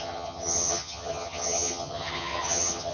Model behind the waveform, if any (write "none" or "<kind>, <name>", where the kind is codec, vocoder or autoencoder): vocoder, HiFi-GAN